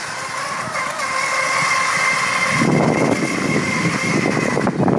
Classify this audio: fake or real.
real